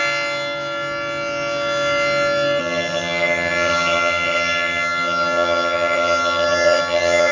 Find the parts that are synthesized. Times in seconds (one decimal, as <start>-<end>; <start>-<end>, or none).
2.6-7.3